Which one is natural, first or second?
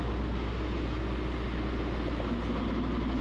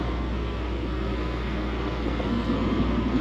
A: first